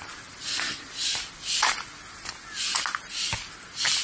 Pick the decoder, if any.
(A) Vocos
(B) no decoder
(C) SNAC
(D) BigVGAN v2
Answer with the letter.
B